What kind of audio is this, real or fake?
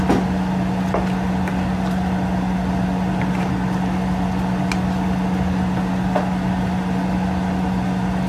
real